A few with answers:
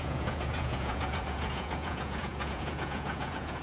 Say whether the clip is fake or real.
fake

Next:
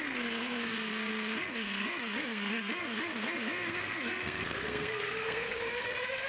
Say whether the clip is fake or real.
fake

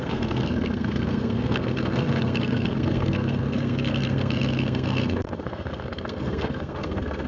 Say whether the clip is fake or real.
fake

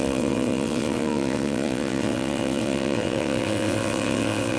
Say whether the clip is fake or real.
fake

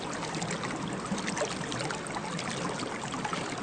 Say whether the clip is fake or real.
real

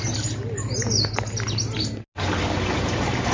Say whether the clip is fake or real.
real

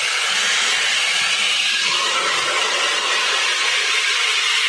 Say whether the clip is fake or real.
real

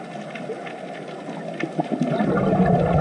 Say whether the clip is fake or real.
real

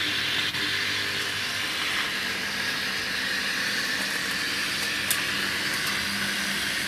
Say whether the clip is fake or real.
real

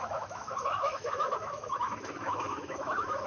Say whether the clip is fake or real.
fake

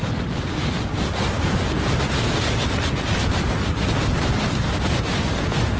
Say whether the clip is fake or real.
real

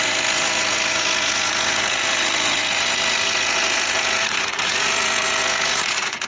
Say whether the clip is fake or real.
fake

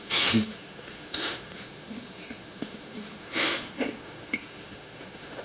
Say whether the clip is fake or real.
fake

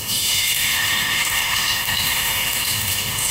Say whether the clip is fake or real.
fake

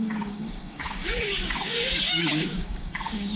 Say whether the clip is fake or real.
fake